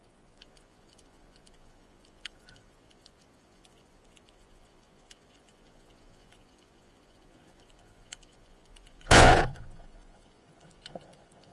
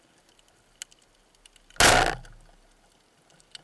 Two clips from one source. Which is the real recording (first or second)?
second